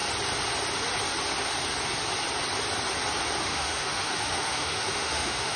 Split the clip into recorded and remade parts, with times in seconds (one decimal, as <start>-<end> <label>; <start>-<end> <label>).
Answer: 0.0-3.4 recorded; 3.4-5.6 remade